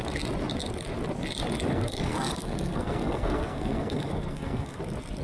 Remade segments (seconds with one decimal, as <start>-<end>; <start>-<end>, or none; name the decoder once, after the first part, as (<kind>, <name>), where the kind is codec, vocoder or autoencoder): 1.7-4.8 (codec, SNAC)

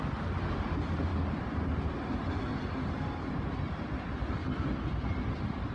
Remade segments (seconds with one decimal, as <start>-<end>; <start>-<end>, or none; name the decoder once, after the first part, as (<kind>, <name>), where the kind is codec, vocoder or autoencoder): none

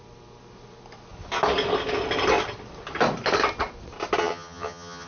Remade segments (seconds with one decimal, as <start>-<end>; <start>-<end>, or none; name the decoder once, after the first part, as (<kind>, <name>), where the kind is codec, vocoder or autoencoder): 4.2-5.1 (vocoder, HiFi-GAN)

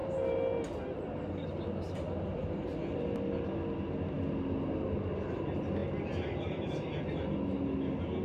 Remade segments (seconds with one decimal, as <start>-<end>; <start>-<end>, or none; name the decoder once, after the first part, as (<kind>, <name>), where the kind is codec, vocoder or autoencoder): none

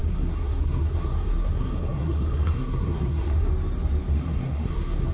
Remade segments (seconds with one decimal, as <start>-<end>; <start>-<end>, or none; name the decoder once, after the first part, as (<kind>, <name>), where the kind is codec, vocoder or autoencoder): 0.0-3.5 (codec, SNAC); 4.1-5.1

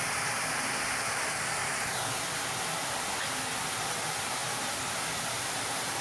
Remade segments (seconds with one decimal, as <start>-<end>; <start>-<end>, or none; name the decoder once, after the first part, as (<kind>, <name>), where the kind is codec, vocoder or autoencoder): none

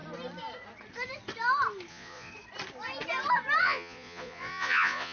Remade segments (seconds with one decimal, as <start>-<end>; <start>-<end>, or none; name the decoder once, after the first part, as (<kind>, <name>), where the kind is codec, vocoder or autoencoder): 1.9-2.3 (vocoder, Vocos); 3.6-5.1

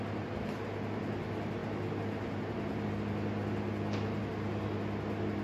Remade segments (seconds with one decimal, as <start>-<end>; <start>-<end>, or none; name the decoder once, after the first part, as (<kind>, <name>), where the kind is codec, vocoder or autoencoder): none